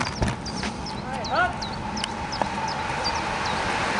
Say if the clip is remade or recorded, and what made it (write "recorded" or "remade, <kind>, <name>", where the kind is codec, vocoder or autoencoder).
recorded